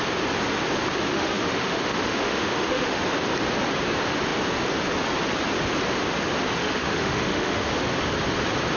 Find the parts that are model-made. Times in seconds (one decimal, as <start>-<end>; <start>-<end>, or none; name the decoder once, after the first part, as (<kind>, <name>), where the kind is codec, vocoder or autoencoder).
1.1-3.0 (autoencoder, DAC-VAE); 6.6-7.7